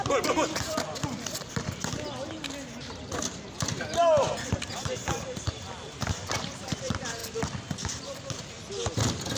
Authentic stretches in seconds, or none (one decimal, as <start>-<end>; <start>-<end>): 7.2-7.9